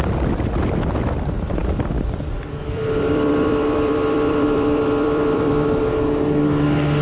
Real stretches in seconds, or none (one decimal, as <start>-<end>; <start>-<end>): 0.0-1.6; 5.8-7.0

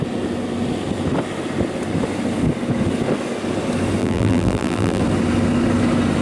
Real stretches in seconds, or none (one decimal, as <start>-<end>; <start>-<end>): 0.0-4.0; 5.0-6.2